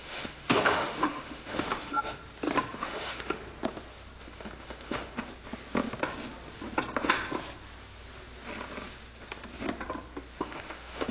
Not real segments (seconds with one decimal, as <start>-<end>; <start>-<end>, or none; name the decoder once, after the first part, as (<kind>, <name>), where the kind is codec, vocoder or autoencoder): 0.0-2.2 (autoencoder, DAC-VAE); 2.7-3.4; 4.2-5.3; 10.4-11.1